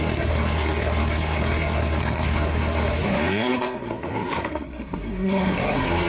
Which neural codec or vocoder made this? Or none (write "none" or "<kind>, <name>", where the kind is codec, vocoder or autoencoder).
codec, SNAC